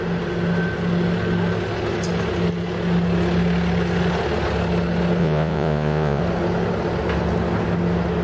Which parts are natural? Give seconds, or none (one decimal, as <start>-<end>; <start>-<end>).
0.0-5.2; 6.2-8.2